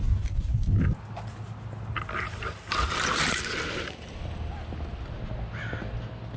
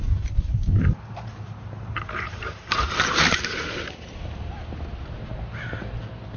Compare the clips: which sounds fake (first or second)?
second